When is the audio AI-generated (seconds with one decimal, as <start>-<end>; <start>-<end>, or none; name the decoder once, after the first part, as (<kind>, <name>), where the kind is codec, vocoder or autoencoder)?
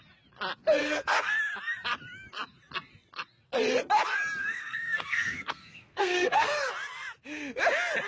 0.8-1.4 (codec, SNAC); 4.4-6.7